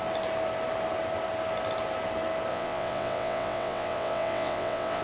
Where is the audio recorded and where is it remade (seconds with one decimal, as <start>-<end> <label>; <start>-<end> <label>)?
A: 0.0-2.5 recorded; 2.5-5.0 remade